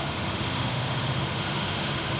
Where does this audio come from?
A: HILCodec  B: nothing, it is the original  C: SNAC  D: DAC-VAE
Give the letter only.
D